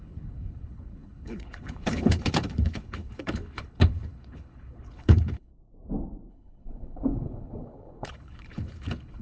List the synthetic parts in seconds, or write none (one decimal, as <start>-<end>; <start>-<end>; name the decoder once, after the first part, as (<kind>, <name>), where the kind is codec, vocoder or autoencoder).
0.0-5.5 (codec, HILCodec); 6.3-9.2